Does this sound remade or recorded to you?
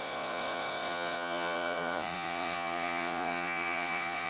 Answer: remade